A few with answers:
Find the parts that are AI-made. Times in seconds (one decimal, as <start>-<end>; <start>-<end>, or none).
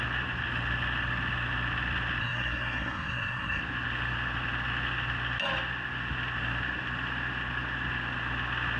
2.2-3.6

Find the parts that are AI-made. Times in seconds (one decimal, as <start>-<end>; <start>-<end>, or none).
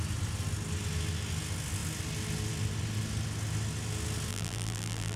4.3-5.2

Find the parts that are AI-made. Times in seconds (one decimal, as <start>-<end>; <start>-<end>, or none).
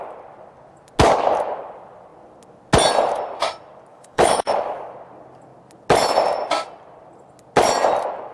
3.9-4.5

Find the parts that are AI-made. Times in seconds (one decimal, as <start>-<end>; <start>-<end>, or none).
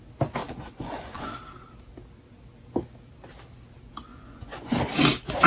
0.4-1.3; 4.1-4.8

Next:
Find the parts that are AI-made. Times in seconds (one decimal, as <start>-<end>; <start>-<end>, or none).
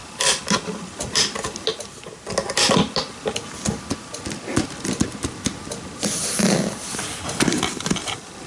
0.0-0.8; 1.7-2.3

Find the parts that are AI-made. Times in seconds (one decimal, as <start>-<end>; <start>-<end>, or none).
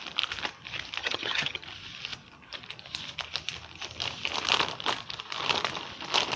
1.0-1.6